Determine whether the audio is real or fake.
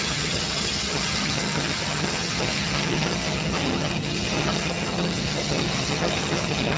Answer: fake